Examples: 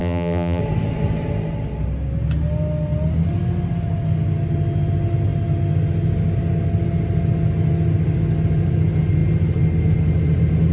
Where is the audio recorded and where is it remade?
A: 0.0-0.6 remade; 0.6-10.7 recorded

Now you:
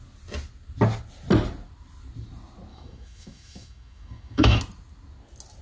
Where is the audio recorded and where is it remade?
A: 0.0-2.7 recorded; 2.7-4.6 remade; 4.6-5.6 recorded

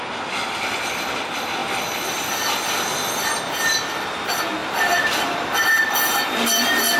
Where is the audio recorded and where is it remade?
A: 0.0-4.6 recorded; 4.6-6.1 remade; 6.1-7.0 recorded

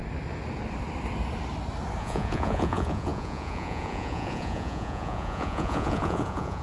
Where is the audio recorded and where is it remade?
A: 0.0-2.0 recorded; 2.0-6.6 remade

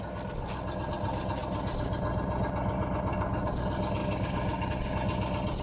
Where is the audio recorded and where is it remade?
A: 0.0-3.1 recorded; 3.1-3.6 remade; 3.6-4.0 recorded; 4.0-4.7 remade; 4.7-5.6 recorded

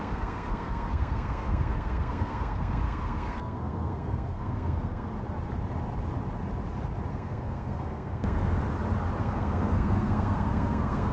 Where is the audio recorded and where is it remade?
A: 0.0-5.1 remade; 5.1-7.1 recorded; 7.1-8.6 remade; 8.6-9.2 recorded; 9.2-11.1 remade

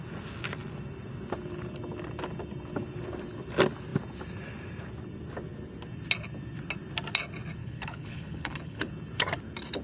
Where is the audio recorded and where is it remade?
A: 0.0-7.6 recorded; 7.6-8.9 remade; 8.9-9.8 recorded

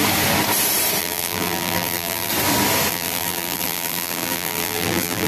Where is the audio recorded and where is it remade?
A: 0.0-1.0 recorded; 1.0-2.3 remade; 2.3-2.9 recorded; 2.9-5.3 remade